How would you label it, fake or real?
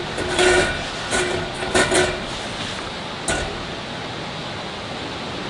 real